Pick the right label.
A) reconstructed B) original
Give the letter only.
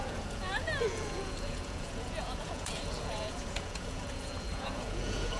A